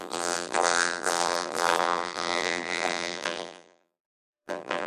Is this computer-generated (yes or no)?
yes